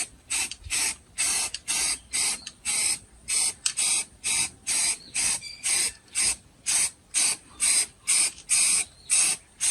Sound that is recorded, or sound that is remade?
recorded